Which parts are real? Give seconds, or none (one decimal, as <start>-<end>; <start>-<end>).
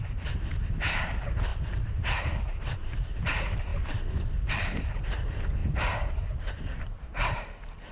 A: none